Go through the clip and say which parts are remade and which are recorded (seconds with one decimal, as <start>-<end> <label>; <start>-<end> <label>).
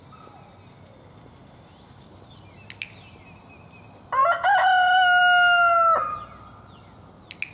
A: 0.0-7.5 recorded